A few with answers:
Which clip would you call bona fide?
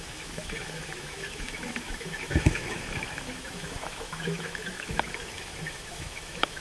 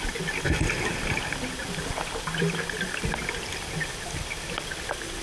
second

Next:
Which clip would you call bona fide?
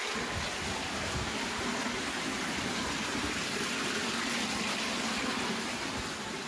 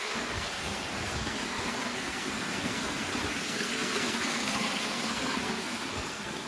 first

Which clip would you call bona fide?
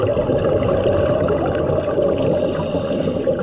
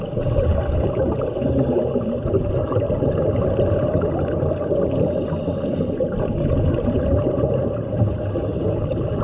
first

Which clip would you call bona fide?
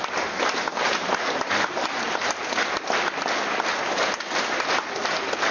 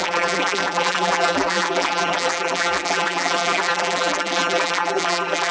first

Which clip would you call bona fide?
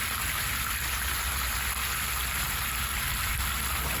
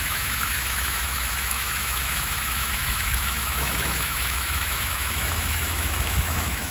first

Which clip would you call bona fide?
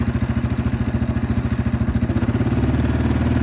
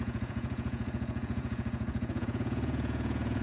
first